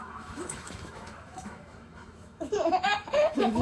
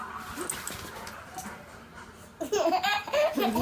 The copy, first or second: first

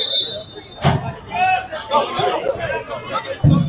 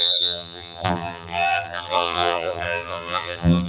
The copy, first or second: second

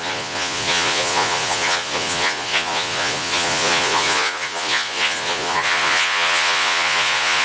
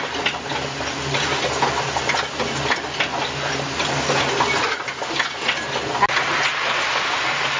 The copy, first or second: first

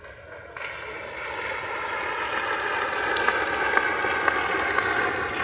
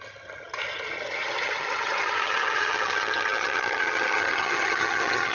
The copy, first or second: second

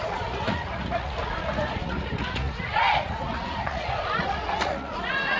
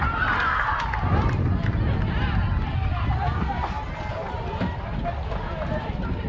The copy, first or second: first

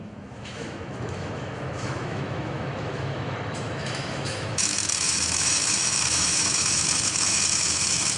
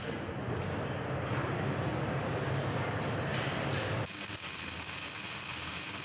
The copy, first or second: first